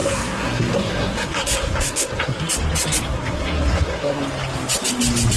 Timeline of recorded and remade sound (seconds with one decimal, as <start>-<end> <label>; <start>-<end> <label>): 0.0-2.5 remade; 2.5-3.1 recorded; 3.1-4.2 remade; 4.2-5.4 recorded